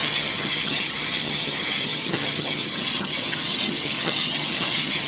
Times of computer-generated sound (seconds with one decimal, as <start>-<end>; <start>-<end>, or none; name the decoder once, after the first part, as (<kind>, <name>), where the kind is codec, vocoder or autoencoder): 0.0-5.1 (vocoder, HiFi-GAN)